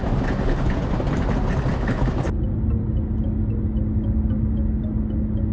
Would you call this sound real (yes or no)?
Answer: yes